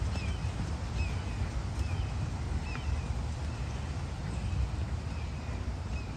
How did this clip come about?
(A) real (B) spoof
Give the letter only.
A